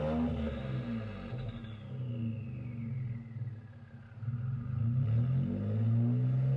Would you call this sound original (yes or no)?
yes